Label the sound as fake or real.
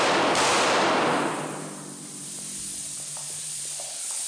fake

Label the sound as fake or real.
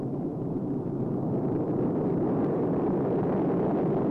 real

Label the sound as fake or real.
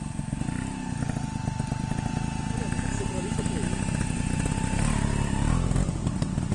real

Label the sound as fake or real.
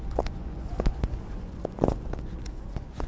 fake